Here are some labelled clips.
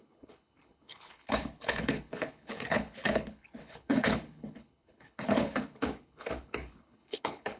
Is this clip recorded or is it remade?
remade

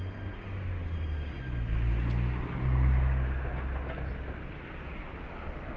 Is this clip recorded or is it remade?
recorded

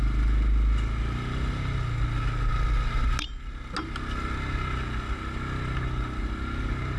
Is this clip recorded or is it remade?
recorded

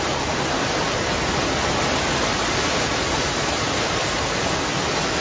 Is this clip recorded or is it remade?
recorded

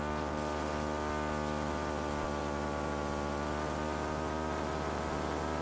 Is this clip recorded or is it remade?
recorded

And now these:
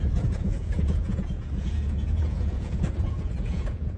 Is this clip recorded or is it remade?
remade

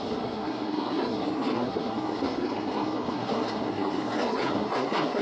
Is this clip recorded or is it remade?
remade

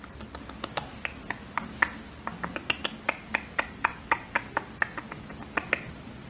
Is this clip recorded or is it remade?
recorded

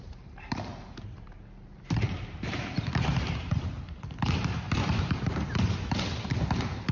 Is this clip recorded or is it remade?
remade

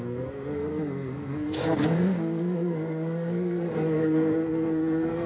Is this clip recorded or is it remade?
remade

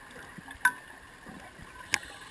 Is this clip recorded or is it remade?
recorded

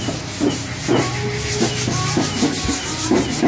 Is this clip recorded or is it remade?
recorded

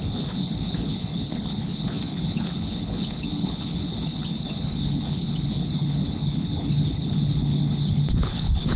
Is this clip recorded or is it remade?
remade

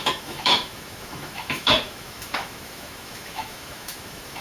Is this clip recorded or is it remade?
remade